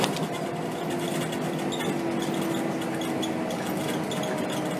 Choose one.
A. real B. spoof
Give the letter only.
A